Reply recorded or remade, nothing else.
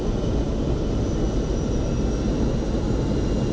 recorded